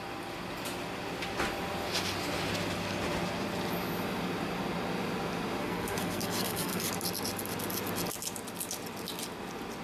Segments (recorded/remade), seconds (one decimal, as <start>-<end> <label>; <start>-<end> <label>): 0.0-5.6 recorded; 5.6-6.9 remade; 6.9-9.8 recorded